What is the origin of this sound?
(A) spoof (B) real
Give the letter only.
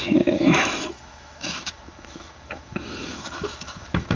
A